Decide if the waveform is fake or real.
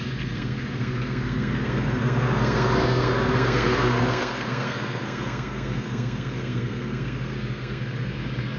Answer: fake